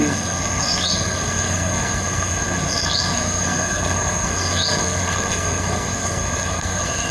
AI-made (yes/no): yes